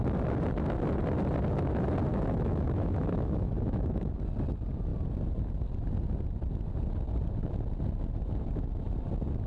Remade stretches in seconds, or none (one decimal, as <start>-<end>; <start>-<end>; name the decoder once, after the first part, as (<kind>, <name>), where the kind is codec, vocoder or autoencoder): 2.1-4.2 (autoencoder, DAC-VAE)